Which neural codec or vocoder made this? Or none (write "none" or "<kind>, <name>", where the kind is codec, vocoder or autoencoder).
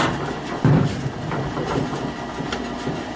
none